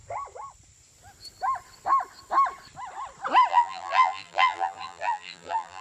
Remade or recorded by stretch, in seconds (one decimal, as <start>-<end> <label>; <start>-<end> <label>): 0.0-3.5 recorded; 3.5-5.8 remade